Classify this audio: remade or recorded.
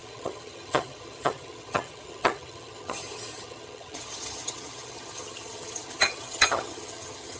remade